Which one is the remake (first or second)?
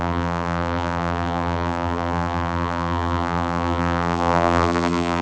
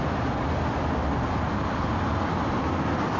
first